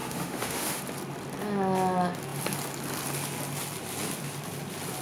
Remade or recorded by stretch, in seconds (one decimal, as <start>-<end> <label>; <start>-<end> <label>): 0.0-0.8 remade; 0.8-5.0 recorded